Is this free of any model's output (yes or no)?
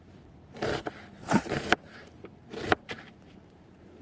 no